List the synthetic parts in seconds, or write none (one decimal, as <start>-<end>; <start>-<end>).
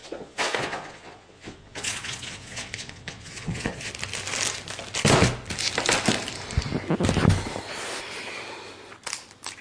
0.0-3.9